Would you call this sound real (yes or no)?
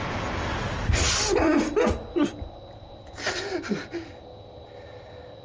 yes